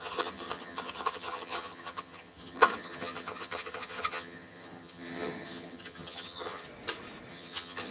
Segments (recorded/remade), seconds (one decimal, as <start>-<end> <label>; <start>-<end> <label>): 0.0-6.7 remade; 6.7-7.3 recorded; 7.3-7.9 remade